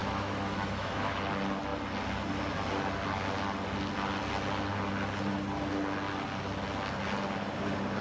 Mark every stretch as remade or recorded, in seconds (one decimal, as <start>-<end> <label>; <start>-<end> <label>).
0.0-1.2 remade; 1.2-8.0 recorded